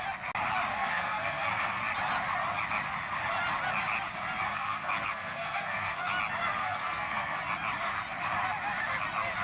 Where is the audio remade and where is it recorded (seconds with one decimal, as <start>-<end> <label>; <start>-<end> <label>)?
0.0-0.7 recorded; 0.7-1.8 remade; 1.8-4.5 recorded; 4.5-6.1 remade; 6.1-6.6 recorded; 6.6-7.4 remade; 7.4-9.4 recorded